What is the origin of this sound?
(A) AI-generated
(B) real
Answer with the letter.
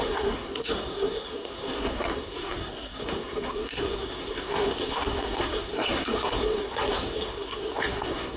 A